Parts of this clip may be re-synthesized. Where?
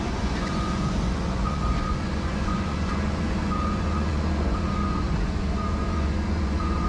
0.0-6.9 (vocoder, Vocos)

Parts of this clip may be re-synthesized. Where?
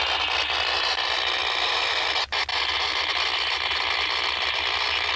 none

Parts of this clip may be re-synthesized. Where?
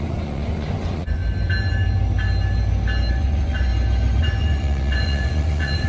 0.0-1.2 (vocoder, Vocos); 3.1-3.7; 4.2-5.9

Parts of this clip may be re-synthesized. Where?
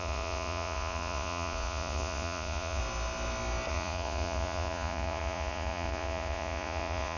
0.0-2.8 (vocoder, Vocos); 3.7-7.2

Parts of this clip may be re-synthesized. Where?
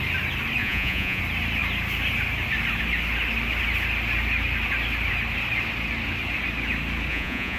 0.6-1.2 (vocoder, Vocos); 7.1-7.6